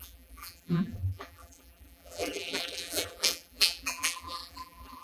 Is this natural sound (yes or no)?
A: no